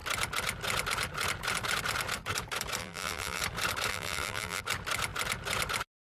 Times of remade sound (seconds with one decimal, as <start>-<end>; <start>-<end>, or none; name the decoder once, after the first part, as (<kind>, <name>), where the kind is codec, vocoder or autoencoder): 2.8-3.4 (vocoder, BigVGAN v2); 3.9-4.6